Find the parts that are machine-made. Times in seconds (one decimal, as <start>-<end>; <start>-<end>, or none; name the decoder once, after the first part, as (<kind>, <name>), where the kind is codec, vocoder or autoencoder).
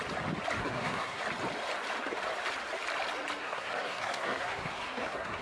0.6-1.2 (codec, SNAC); 3.4-5.4